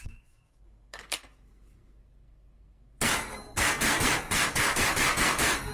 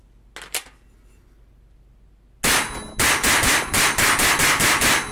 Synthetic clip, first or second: first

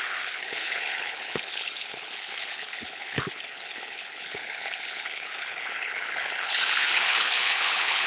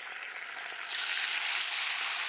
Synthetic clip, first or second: first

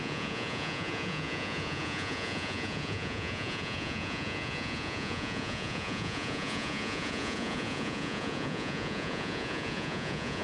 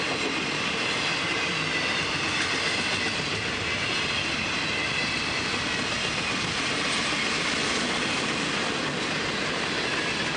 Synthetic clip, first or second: first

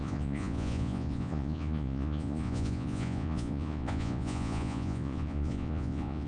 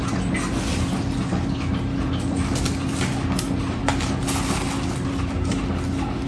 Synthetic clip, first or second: first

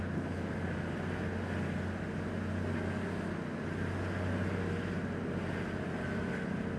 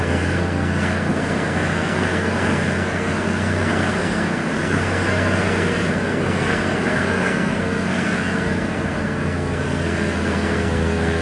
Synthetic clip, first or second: second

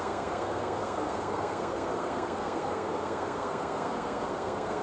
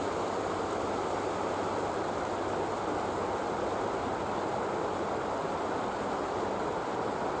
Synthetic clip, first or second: first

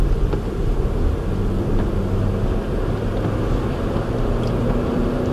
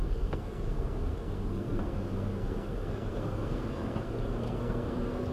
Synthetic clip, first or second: second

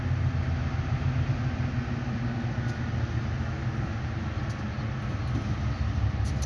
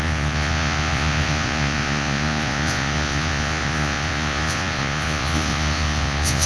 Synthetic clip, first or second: second